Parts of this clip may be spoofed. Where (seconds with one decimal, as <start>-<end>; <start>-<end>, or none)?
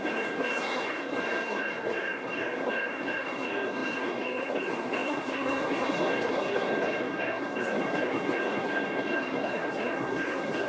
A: 0.0-10.7